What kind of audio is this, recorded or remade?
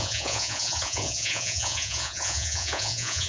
remade